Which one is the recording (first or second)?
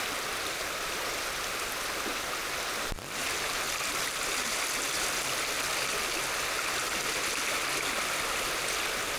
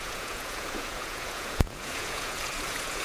first